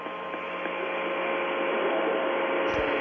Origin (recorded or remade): recorded